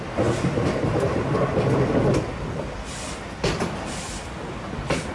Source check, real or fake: real